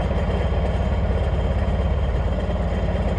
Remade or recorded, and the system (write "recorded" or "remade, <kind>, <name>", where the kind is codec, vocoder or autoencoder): recorded